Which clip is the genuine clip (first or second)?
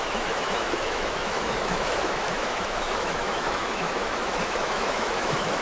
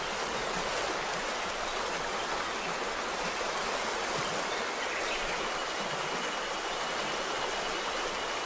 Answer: second